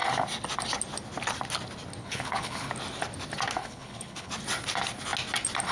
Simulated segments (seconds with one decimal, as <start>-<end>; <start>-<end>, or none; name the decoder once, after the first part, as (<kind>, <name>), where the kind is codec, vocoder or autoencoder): 2.0-2.7 (codec, HILCodec); 3.6-4.3

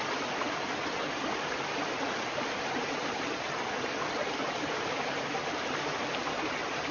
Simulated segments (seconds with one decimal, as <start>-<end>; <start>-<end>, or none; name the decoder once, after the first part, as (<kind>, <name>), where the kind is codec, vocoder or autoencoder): none

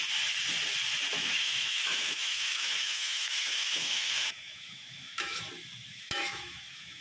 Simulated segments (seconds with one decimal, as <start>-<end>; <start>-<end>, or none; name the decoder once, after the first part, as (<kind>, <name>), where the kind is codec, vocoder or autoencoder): 1.2-5.4 (autoencoder, DAC-VAE); 5.9-7.0

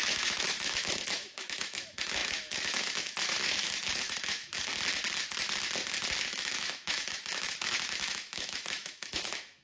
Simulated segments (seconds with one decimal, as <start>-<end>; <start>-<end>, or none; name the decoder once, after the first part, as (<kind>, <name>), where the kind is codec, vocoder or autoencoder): 0.0-4.7 (autoencoder, DAC-VAE); 6.2-9.6

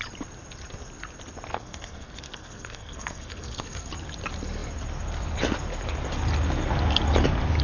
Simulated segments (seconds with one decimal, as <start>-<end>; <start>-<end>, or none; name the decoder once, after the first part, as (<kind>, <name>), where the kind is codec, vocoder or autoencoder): 1.5-3.9 (codec, SNAC)

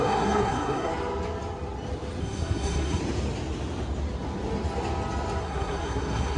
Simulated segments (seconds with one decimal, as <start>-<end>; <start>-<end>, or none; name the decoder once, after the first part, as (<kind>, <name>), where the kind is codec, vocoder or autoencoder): 0.0-0.9 (codec, SNAC); 2.2-3.0; 5.4-6.4